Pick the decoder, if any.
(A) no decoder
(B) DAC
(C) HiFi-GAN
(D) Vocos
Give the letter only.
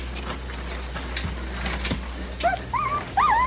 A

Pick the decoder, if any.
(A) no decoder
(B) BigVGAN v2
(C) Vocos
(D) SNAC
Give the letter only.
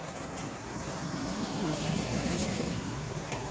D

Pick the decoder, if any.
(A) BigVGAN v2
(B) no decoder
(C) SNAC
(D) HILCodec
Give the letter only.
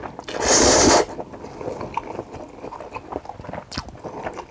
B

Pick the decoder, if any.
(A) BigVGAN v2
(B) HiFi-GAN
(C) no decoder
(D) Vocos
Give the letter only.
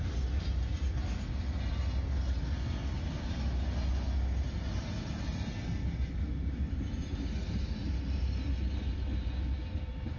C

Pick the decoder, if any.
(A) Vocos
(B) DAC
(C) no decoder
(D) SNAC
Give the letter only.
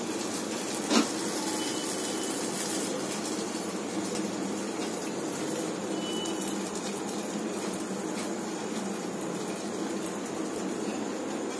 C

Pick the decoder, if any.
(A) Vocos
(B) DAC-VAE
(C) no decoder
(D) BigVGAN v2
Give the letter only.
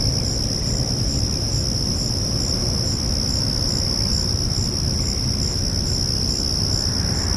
C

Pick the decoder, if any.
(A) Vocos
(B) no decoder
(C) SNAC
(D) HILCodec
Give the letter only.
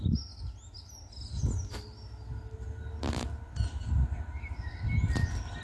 B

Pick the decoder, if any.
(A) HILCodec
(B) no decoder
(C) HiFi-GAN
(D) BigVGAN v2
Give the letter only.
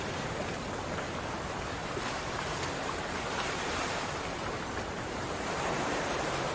D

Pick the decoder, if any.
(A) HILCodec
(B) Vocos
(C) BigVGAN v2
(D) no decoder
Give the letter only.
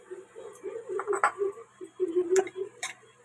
C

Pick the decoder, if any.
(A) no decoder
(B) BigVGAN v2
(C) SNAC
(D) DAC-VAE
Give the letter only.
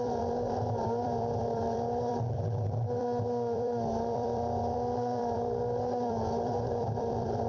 B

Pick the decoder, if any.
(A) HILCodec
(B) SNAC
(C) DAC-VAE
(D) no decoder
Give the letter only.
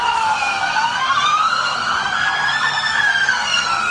B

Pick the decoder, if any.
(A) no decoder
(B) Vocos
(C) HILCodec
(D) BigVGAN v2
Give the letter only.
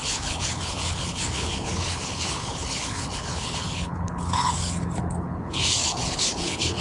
C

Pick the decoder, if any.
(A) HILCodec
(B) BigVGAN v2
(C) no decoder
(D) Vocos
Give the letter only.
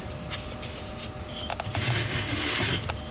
C